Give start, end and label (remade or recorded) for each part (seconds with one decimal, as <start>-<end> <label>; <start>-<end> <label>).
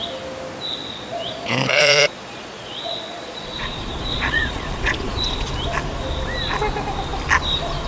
0.0-0.8 recorded; 0.8-5.5 remade; 5.5-7.9 recorded